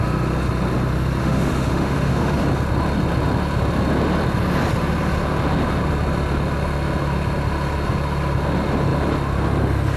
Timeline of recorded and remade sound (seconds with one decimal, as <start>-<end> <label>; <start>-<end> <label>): 0.0-1.2 recorded; 1.2-2.4 remade; 2.4-10.0 recorded